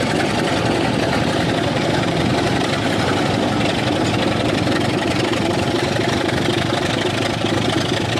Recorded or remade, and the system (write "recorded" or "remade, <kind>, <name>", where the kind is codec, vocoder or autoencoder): remade, vocoder, BigVGAN v2